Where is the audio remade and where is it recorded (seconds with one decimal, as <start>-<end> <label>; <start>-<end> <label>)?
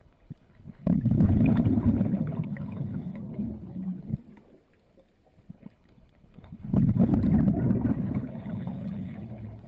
0.0-4.1 remade; 4.1-5.5 recorded; 5.5-7.1 remade; 7.1-7.9 recorded; 7.9-9.7 remade